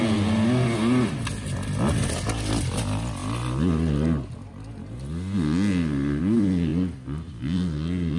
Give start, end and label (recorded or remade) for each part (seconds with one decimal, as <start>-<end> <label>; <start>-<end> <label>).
0.0-8.2 recorded